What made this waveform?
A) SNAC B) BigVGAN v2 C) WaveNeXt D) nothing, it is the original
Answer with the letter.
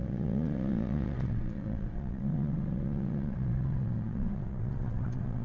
C